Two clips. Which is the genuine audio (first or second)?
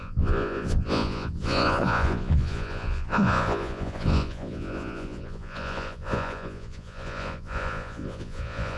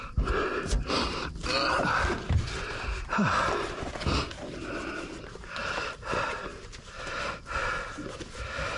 second